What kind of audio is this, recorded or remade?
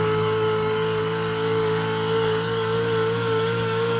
remade